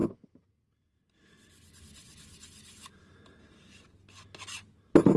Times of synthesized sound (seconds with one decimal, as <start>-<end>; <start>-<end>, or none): none

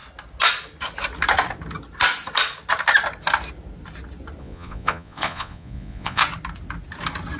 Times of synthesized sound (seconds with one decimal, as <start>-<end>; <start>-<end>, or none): 4.4-6.2

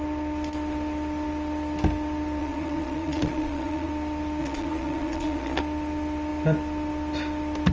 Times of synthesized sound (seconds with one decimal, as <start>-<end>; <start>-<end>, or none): 2.4-3.9; 4.4-5.6

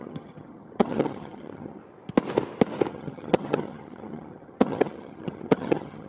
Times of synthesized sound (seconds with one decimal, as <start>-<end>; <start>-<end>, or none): 0.0-1.8; 2.9-6.1